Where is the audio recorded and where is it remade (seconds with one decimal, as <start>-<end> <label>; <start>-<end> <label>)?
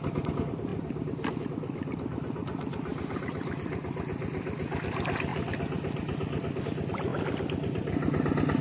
0.0-0.7 recorded; 0.7-1.4 remade; 1.4-5.3 recorded; 5.3-6.6 remade; 6.6-7.1 recorded; 7.1-8.6 remade